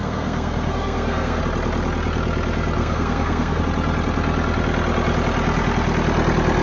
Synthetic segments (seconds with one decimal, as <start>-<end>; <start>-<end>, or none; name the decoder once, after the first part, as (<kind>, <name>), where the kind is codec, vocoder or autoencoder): 0.0-1.4 (codec, SNAC); 2.8-3.6